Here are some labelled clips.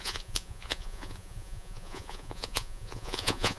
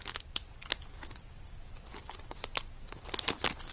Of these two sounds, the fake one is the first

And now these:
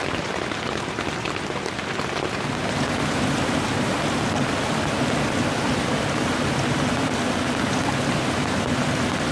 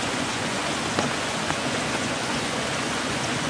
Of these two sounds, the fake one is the second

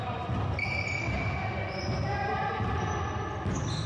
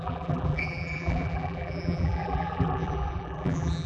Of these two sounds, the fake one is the second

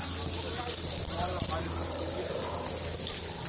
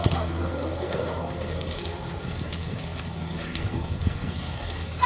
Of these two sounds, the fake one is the second